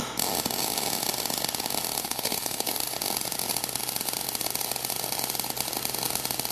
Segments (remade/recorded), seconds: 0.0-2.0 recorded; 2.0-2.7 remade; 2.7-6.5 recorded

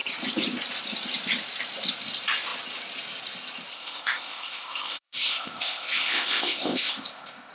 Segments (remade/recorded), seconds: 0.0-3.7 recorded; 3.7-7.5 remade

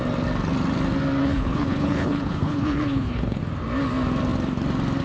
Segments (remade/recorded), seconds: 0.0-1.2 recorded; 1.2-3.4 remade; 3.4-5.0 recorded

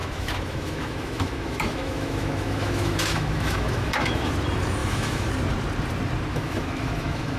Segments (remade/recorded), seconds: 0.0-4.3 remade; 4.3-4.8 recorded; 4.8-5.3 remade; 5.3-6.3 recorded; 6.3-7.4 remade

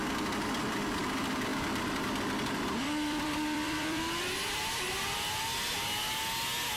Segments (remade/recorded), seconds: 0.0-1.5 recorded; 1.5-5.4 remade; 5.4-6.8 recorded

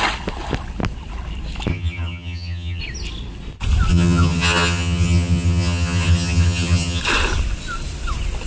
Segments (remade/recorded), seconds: 0.0-1.7 recorded; 1.7-2.8 remade; 2.8-3.9 recorded; 3.9-7.0 remade; 7.0-8.5 recorded

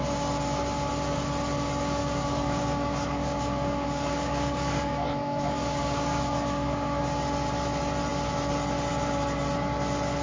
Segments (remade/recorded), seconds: 0.0-2.0 recorded; 2.0-7.0 remade; 7.0-10.2 recorded

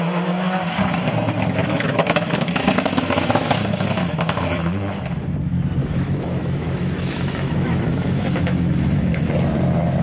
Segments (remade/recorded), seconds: 0.0-1.6 recorded; 1.6-3.5 remade; 3.5-5.8 recorded; 5.8-9.3 remade; 9.3-10.0 recorded